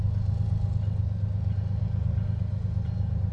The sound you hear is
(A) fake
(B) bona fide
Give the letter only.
B